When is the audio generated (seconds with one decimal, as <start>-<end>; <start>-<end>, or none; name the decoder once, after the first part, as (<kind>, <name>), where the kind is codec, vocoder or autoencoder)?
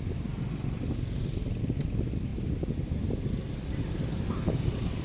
none